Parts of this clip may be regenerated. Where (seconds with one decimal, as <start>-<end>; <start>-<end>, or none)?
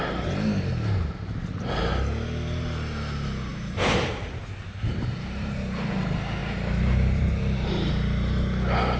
3.5-6.0; 6.4-7.9